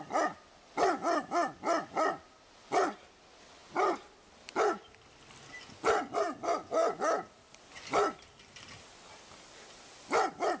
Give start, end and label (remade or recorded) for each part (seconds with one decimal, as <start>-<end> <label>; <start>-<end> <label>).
0.0-10.6 recorded